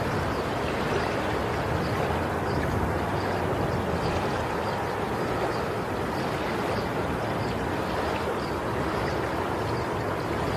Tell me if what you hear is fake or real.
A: real